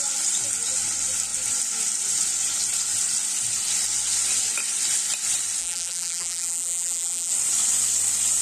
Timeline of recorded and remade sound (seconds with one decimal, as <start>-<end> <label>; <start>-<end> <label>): 0.0-5.6 recorded; 5.6-7.3 remade; 7.3-8.4 recorded